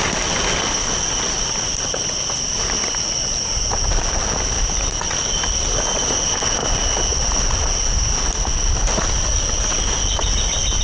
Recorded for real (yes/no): yes